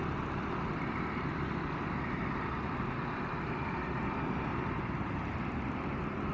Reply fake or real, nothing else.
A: real